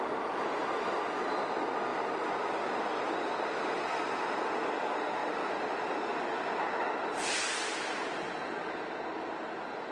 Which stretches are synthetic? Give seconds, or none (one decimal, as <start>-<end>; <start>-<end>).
none